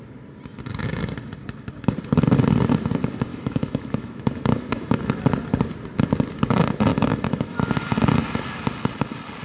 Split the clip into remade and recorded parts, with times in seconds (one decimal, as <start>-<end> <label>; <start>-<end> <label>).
0.0-3.3 recorded; 3.3-5.2 remade; 5.2-6.9 recorded; 6.9-7.7 remade; 7.7-9.4 recorded